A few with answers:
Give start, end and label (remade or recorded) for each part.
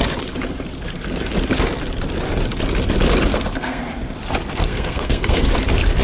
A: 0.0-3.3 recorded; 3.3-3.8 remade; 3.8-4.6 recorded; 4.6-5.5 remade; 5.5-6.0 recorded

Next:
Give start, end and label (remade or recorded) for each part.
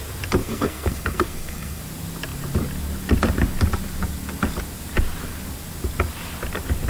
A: 0.0-0.4 recorded; 0.4-1.8 remade; 1.8-6.9 recorded